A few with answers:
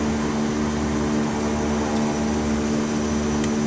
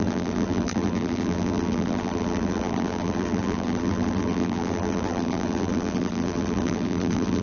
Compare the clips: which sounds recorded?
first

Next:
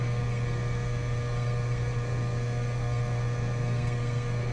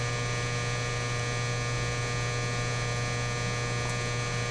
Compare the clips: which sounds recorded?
second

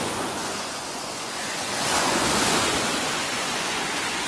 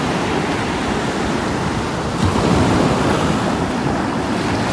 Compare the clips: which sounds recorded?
second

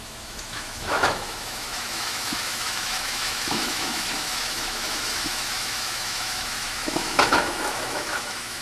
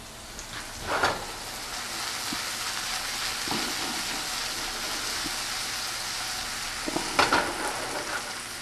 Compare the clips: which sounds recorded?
second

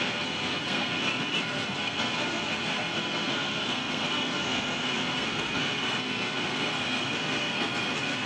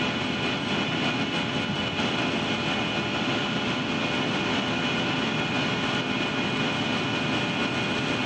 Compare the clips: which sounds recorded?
second